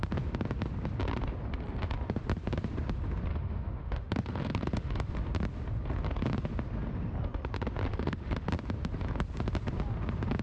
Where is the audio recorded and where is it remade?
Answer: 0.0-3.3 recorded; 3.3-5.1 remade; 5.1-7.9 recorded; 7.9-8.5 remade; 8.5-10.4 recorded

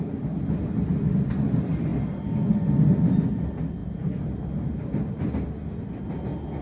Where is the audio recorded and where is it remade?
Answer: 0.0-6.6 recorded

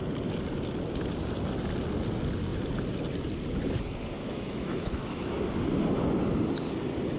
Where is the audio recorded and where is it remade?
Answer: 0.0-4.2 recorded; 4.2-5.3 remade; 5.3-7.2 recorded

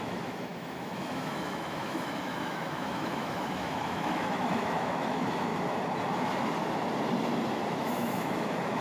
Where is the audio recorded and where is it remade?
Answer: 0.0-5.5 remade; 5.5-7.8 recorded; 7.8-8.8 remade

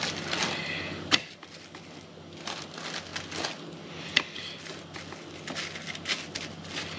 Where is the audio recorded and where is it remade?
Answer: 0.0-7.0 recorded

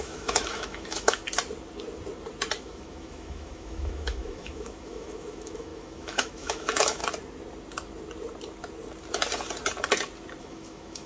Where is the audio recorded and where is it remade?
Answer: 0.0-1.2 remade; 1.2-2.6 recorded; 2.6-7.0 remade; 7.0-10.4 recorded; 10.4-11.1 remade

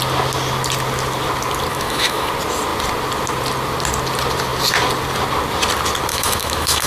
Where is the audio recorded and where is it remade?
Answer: 0.0-1.7 recorded; 1.7-2.3 remade; 2.3-6.1 recorded; 6.1-6.9 remade